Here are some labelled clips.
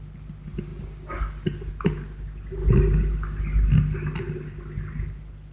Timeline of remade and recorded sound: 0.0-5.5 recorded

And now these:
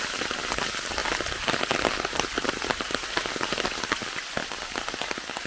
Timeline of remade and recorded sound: 0.0-5.5 recorded